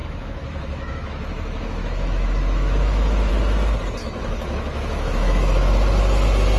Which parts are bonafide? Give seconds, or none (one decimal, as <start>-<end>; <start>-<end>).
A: 3.3-4.0; 6.0-6.6